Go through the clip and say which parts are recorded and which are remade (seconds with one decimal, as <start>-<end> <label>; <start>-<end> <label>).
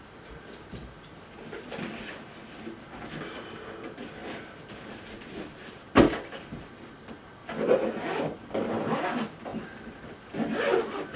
0.0-4.2 recorded; 4.2-6.6 remade; 6.6-7.4 recorded; 7.4-8.7 remade; 8.7-9.5 recorded; 9.5-11.2 remade